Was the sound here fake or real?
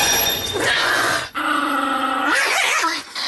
fake